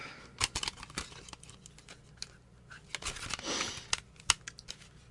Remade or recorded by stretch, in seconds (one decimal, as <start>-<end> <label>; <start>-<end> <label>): 0.0-5.1 recorded